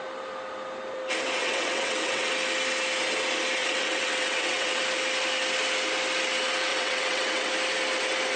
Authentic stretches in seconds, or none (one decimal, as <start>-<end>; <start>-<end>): 0.0-1.4; 2.3-3.6; 4.8-6.7; 7.5-8.4